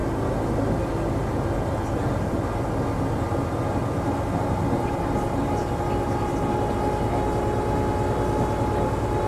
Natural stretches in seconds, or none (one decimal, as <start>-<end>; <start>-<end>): 0.0-9.3